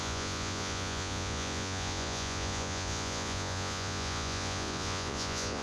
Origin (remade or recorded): remade